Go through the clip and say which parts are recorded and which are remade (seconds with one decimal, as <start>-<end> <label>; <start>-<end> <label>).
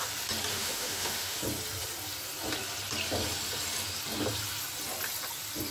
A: 0.0-0.5 recorded; 0.5-1.4 remade; 1.4-5.7 recorded